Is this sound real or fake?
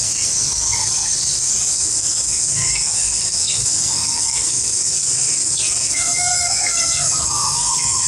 fake